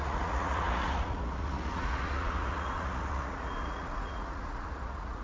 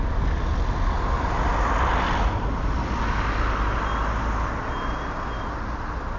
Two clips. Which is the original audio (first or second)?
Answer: second